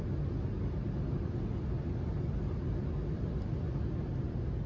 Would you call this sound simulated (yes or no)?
no